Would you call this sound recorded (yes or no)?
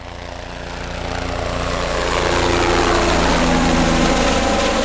yes